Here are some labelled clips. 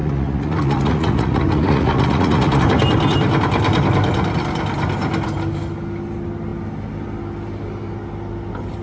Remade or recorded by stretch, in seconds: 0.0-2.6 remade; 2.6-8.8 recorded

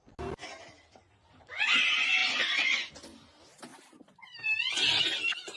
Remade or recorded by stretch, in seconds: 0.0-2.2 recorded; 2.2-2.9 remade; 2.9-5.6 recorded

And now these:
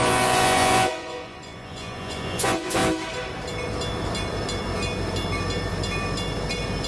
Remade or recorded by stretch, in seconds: 0.0-2.8 remade; 2.8-6.9 recorded

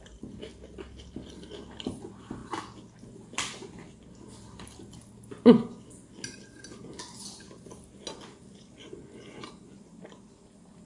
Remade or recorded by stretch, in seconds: 0.0-8.8 recorded; 8.8-9.5 remade; 9.5-10.9 recorded